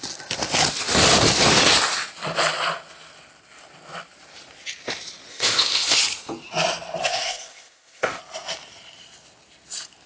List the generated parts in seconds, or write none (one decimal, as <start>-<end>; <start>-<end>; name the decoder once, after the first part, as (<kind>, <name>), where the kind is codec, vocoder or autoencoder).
5.3-6.0 (codec, ZipCodec); 7.0-8.2